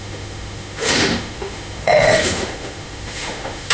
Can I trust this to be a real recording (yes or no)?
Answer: no